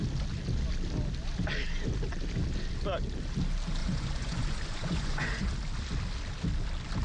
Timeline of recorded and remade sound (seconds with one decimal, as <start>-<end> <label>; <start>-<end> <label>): 0.0-3.8 recorded; 3.8-5.5 remade; 5.5-7.0 recorded